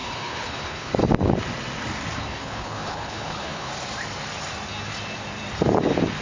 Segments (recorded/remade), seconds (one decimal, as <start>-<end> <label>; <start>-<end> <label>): 0.0-0.9 remade; 0.9-2.3 recorded; 2.3-3.7 remade; 3.7-6.2 recorded

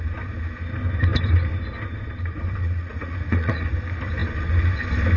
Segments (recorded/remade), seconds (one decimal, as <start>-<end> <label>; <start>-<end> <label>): 0.0-2.6 recorded; 2.6-3.7 remade; 3.7-5.2 recorded

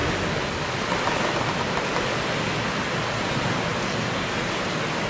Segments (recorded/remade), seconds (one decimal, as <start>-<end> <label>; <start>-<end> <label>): 0.0-5.1 recorded